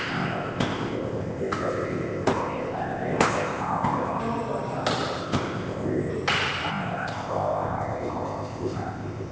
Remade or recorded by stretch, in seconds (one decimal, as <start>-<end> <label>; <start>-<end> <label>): 0.0-4.2 remade; 4.2-5.2 recorded; 5.2-6.1 remade; 6.1-6.7 recorded; 6.7-9.3 remade